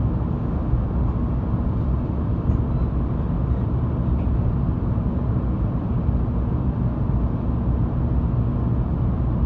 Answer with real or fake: real